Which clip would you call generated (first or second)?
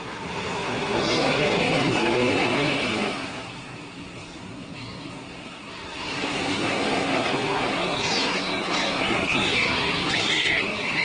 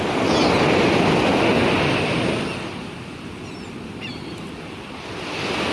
first